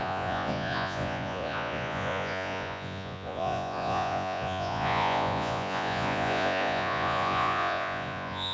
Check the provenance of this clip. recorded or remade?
remade